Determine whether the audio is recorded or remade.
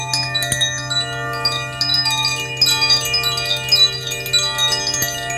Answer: recorded